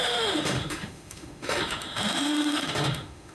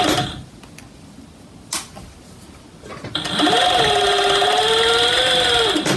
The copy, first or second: first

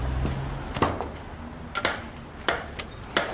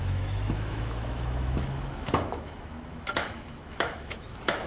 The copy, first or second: second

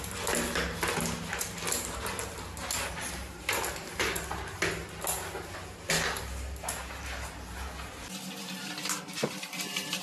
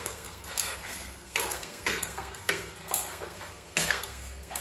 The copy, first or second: second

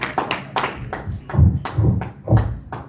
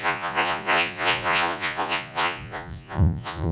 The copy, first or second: second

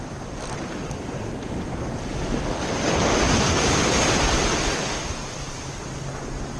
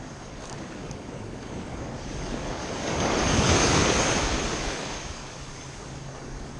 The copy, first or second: second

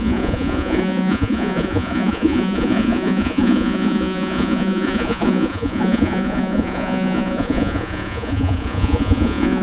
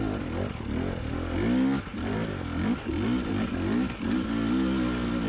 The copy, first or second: first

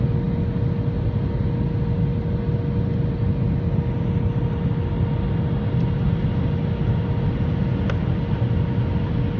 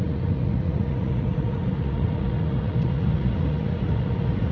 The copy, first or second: second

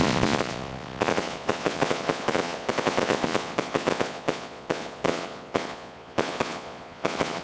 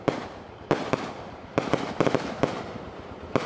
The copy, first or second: first